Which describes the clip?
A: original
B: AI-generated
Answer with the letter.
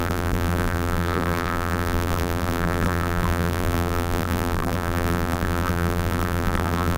B